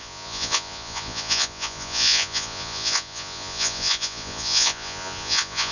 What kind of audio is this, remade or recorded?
remade